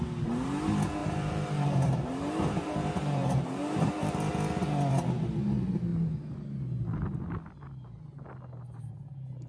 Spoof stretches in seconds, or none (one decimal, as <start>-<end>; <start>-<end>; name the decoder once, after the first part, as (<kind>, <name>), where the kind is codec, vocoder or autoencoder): 1.0-4.3 (vocoder, BigVGAN v2)